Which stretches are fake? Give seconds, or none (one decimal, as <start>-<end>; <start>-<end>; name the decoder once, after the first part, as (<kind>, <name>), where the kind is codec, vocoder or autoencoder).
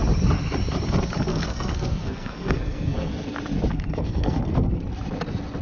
1.3-3.1 (codec, SNAC); 3.7-4.8